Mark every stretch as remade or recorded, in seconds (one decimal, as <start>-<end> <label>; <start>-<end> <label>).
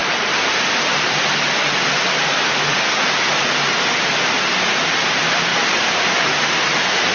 0.0-1.2 remade; 1.2-7.1 recorded